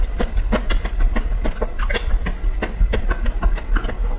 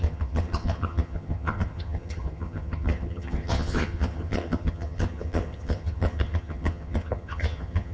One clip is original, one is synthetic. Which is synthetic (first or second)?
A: second